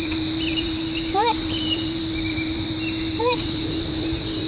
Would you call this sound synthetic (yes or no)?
yes